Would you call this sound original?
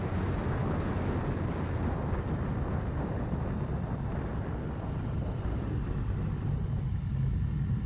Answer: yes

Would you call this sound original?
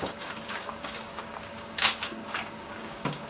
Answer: no